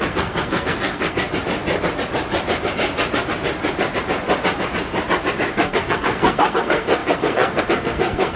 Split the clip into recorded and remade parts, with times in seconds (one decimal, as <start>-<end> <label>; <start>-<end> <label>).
0.0-1.3 remade; 1.3-5.5 recorded; 5.5-8.4 remade